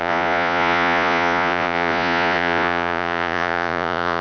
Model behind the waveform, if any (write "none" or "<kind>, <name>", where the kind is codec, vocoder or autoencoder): vocoder, Vocos